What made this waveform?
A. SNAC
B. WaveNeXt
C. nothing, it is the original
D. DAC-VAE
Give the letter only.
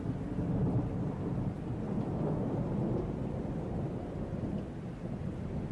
C